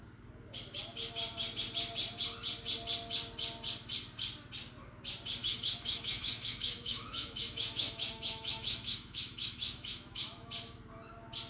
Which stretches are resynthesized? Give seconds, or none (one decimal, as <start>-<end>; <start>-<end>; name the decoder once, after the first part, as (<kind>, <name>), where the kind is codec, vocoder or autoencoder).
5.4-10.5 (autoencoder, DAC-VAE)